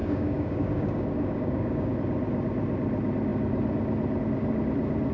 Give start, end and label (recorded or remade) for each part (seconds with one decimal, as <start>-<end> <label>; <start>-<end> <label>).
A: 0.0-1.9 remade; 1.9-5.1 recorded